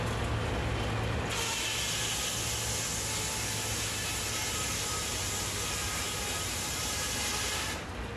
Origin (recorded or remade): recorded